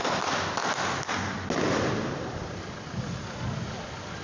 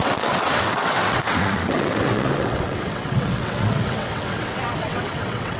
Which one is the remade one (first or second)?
second